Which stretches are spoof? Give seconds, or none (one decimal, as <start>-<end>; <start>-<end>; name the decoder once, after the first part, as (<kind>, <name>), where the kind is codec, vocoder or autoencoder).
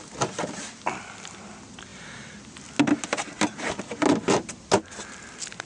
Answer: none